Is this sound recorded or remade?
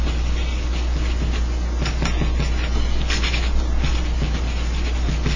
recorded